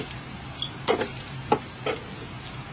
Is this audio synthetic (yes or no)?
no